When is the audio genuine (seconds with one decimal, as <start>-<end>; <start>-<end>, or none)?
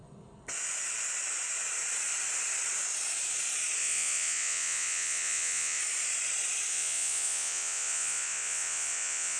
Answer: 0.0-3.8; 5.8-6.7